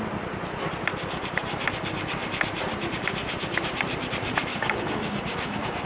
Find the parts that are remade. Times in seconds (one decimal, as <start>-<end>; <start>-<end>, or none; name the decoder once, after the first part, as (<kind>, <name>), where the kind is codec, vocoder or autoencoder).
4.5-5.9 (codec, DAC)